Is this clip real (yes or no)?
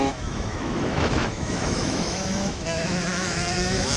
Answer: no